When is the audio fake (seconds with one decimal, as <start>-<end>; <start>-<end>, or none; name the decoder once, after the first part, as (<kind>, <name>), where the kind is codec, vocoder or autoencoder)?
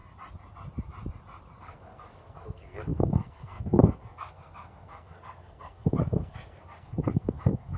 1.6-7.8 (codec, SNAC)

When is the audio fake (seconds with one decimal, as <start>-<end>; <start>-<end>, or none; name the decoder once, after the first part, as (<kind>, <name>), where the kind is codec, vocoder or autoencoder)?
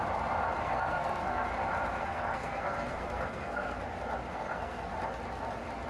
0.6-1.5 (codec, SNAC); 2.0-3.8; 4.3-4.9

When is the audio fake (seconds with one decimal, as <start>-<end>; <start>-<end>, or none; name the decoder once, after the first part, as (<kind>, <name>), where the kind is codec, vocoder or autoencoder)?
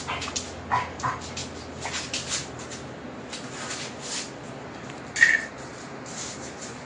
none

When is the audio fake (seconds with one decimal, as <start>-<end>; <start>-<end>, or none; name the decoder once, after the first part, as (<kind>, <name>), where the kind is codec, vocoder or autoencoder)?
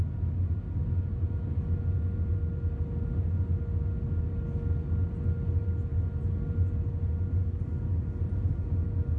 none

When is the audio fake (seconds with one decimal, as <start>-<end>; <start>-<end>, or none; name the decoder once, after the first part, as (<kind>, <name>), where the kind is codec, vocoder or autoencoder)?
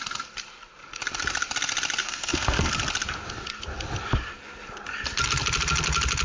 2.0-2.7 (codec, SNAC)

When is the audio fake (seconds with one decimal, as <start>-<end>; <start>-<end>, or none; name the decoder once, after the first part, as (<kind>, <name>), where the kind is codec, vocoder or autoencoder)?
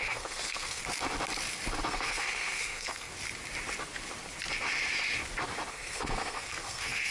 0.0-0.8 (codec, SNAC); 1.9-3.1; 5.7-7.1